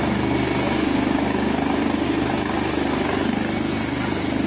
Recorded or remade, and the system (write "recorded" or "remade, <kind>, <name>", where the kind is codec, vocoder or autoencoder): recorded